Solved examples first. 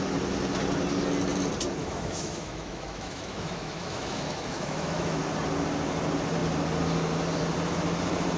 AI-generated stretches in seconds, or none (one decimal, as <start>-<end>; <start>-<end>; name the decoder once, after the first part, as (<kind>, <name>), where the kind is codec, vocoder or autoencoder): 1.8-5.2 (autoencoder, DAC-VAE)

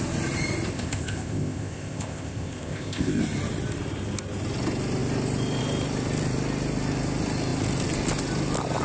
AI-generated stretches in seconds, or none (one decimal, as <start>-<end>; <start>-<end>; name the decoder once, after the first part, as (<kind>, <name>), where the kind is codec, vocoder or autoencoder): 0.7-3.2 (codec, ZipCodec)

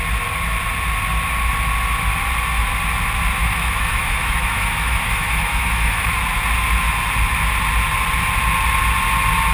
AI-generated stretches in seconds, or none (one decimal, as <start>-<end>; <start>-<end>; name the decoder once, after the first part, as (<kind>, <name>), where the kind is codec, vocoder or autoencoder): 3.4-6.1 (autoencoder, DAC-VAE)